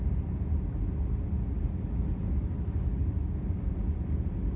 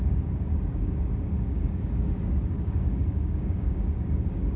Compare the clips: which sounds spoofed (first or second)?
second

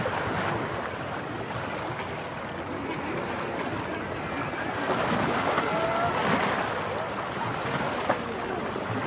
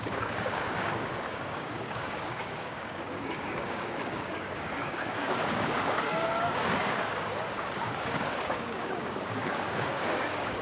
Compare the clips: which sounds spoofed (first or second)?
second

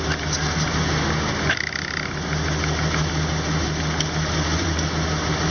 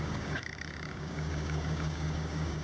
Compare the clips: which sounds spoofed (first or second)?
second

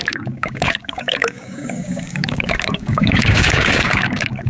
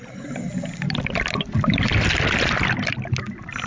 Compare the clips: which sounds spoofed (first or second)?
first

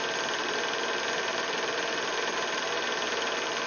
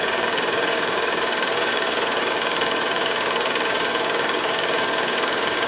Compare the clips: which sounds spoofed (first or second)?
second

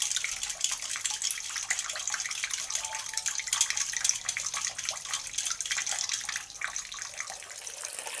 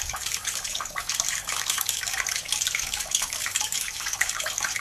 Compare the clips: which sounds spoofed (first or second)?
second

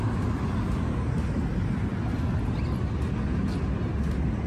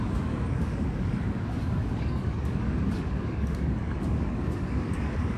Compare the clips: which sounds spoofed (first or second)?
second